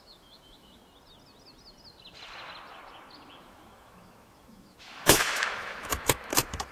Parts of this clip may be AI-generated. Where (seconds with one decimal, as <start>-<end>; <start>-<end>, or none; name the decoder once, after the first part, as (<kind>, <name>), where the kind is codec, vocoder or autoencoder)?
0.0-0.8 (autoencoder, DAC-VAE); 3.4-6.7